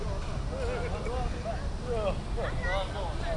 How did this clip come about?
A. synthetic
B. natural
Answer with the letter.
B